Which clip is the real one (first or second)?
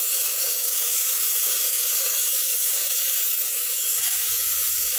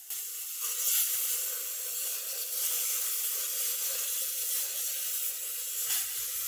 second